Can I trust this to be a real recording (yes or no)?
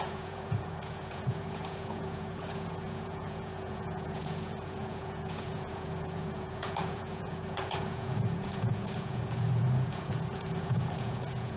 no